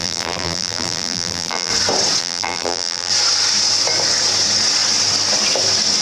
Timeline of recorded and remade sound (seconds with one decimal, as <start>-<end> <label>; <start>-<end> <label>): 0.0-1.7 remade; 1.7-2.2 recorded; 2.2-3.1 remade; 3.1-6.0 recorded